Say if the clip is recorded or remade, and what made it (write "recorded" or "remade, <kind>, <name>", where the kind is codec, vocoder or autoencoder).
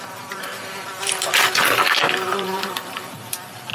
remade, vocoder, BigVGAN v2